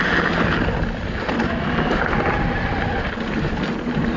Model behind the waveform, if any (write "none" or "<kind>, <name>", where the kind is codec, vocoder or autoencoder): none